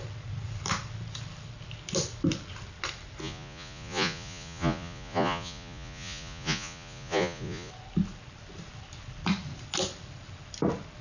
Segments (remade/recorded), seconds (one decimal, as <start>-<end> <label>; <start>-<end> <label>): 0.0-3.2 recorded; 3.2-7.7 remade; 7.7-11.0 recorded

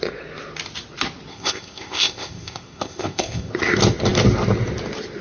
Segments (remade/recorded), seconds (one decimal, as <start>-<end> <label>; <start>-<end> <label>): 0.0-1.3 recorded; 1.3-3.5 remade; 3.5-5.2 recorded

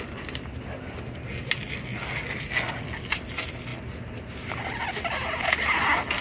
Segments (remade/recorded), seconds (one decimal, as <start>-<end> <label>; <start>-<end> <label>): 0.0-6.2 recorded

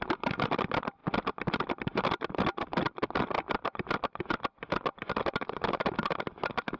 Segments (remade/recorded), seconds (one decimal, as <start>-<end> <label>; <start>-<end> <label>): 0.0-6.8 recorded

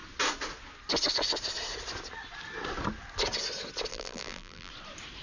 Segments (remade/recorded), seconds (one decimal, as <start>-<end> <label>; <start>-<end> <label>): 0.0-3.9 recorded; 3.9-4.7 remade; 4.7-5.2 recorded